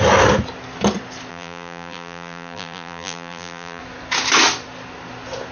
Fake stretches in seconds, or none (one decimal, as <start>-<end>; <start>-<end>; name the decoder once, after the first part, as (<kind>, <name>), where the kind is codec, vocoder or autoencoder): 1.3-3.8 (vocoder, BigVGAN v2)